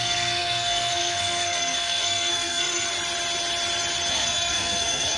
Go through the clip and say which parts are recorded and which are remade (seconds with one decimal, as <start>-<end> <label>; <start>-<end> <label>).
0.0-2.9 remade; 2.9-4.1 recorded; 4.1-5.2 remade